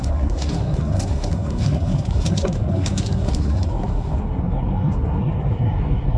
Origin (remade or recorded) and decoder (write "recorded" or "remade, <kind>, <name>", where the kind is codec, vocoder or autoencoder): remade, codec, SNAC